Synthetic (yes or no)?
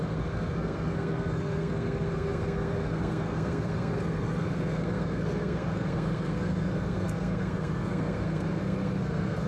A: yes